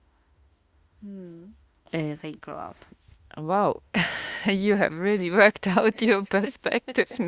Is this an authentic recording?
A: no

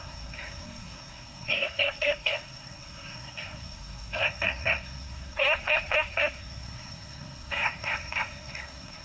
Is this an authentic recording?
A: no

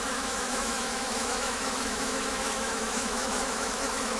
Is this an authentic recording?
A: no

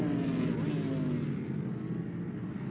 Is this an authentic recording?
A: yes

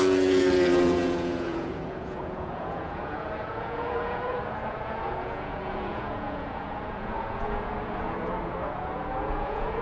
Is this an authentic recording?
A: no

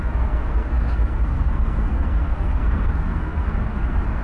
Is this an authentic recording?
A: no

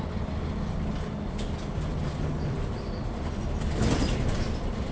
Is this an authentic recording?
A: yes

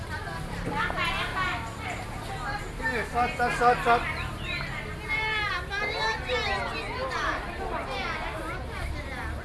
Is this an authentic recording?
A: yes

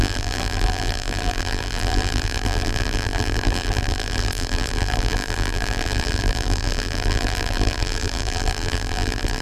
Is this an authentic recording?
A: no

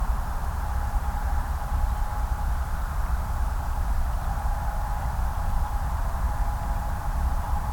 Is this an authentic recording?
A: no